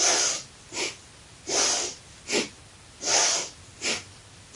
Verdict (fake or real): real